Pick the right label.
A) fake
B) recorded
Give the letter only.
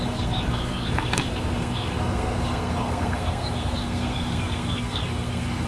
A